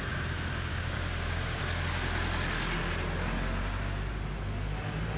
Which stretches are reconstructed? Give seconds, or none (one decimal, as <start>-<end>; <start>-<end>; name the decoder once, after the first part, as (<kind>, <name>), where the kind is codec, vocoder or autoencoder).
0.7-1.6 (codec, DAC)